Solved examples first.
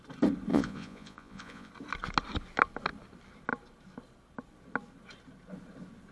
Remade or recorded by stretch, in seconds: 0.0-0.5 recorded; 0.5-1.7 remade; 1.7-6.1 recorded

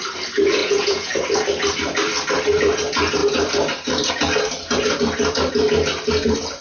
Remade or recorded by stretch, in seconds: 0.0-0.6 recorded; 0.6-1.1 remade; 1.1-6.6 recorded

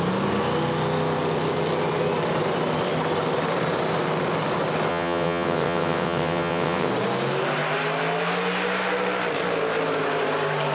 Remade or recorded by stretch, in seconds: 0.0-4.9 recorded; 4.9-6.9 remade; 6.9-10.7 recorded

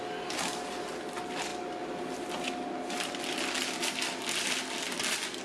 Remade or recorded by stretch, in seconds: 0.0-5.4 recorded

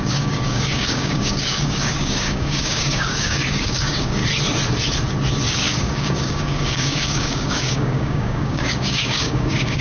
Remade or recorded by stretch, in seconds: 0.0-4.2 remade; 4.2-5.5 recorded; 5.5-9.8 remade